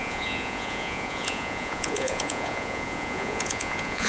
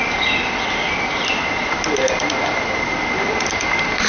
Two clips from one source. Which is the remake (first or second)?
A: first